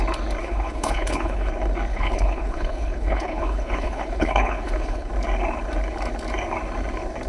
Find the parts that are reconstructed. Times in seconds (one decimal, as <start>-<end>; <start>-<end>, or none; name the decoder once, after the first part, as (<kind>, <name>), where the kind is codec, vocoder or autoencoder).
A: 0.4-1.5 (codec, HILCodec); 1.9-5.1